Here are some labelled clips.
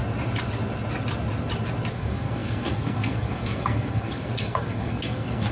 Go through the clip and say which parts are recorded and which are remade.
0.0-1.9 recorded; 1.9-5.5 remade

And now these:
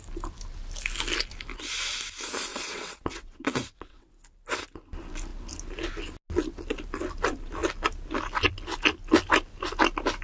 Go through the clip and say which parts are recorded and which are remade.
0.0-2.5 recorded; 2.5-4.1 remade; 4.1-10.2 recorded

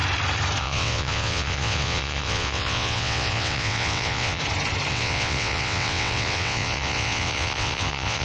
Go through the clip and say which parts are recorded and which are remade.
0.0-0.6 recorded; 0.6-4.4 remade; 4.4-4.9 recorded; 4.9-8.2 remade

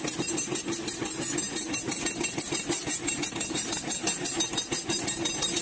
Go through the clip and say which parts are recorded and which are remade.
0.0-5.6 recorded

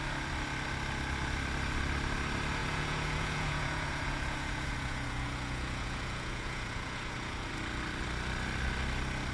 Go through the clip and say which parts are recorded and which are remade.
0.0-2.6 recorded; 2.6-7.5 remade; 7.5-9.3 recorded

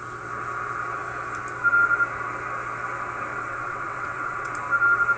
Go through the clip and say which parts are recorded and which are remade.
0.0-3.3 recorded; 3.3-4.5 remade; 4.5-5.2 recorded

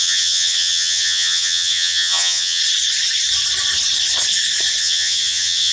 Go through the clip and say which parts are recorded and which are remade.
0.0-2.6 remade; 2.6-4.8 recorded; 4.8-5.7 remade

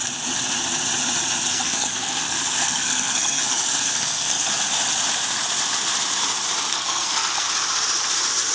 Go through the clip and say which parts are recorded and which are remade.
0.0-1.5 recorded; 1.5-4.6 remade; 4.6-6.7 recorded; 6.7-7.5 remade; 7.5-8.5 recorded